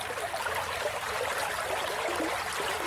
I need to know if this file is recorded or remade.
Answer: recorded